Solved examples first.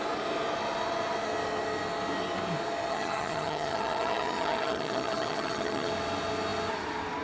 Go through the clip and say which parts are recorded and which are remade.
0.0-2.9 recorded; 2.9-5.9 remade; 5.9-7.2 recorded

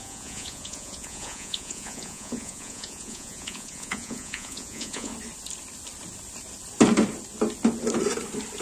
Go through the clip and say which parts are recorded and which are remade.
0.0-5.1 remade; 5.1-8.6 recorded

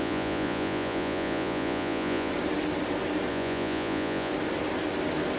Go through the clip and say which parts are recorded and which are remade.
0.0-2.3 remade; 2.3-3.3 recorded; 3.3-4.3 remade; 4.3-5.4 recorded